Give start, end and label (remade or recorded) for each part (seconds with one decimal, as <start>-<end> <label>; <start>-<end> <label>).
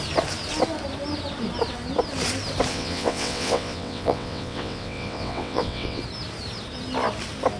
0.0-2.7 recorded; 2.7-6.0 remade; 6.0-7.6 recorded